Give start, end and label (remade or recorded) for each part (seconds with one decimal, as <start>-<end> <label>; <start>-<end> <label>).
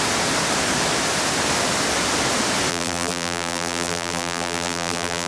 0.0-2.7 recorded; 2.7-5.3 remade